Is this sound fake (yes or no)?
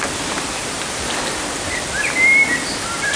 no